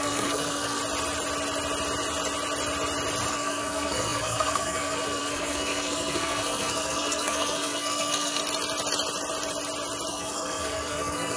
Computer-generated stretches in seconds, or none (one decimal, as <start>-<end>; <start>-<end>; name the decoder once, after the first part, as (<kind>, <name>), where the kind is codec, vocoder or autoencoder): 0.0-0.8 (codec, SNAC); 3.3-8.4; 10.1-11.4